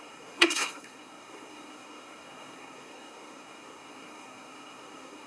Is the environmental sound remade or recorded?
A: remade